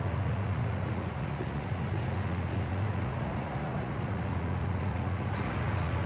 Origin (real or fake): fake